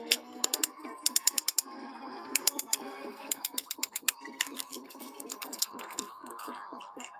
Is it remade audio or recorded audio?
remade